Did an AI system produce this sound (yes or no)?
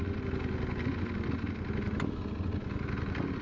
no